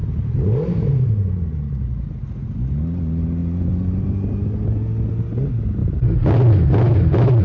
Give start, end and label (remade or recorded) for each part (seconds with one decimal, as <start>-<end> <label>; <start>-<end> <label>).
0.0-1.5 remade; 1.5-5.8 recorded; 5.8-7.4 remade